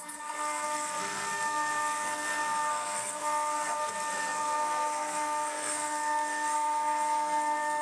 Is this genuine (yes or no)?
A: no